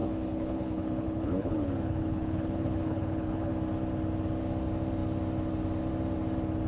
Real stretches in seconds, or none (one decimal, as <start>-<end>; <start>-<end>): 3.5-6.7